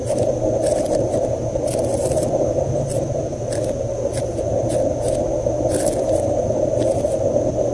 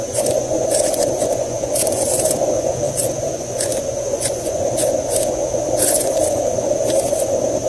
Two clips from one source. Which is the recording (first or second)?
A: first